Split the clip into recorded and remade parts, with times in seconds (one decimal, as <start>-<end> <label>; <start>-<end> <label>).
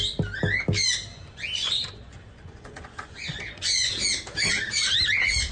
0.0-1.1 recorded; 1.1-3.9 remade; 3.9-5.5 recorded